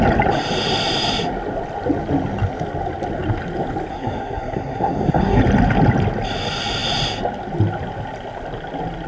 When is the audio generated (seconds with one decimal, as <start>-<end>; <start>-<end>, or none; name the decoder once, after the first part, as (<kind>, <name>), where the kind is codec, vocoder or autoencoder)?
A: 3.9-5.4 (codec, SNAC)